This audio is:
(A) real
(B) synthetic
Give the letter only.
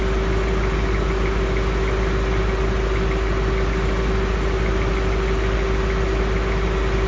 A